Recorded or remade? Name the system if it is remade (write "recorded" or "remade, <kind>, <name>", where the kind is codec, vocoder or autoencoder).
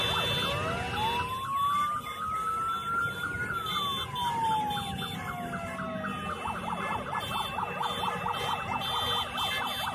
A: recorded